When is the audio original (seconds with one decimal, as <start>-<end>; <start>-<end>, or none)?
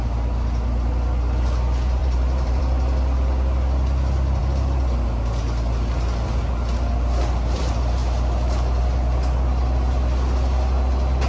0.0-2.0; 2.6-11.3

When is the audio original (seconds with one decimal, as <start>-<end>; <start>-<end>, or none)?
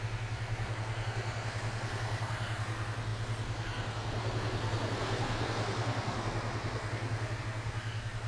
none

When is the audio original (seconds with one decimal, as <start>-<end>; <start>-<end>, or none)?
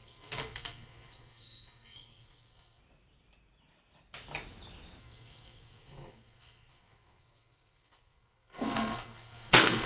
2.8-5.0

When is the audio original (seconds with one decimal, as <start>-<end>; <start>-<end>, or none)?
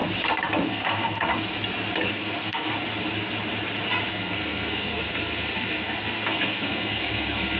0.0-0.7; 1.3-2.1; 2.7-4.1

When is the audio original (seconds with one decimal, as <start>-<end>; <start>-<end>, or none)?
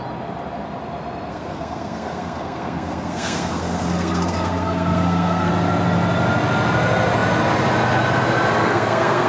0.0-1.3; 5.5-8.6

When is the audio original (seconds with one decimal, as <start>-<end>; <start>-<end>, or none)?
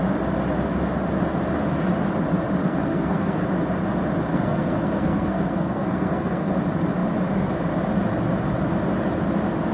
0.0-2.6; 3.4-4.3; 6.5-9.7